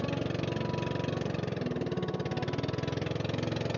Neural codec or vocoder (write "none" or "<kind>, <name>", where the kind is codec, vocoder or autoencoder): none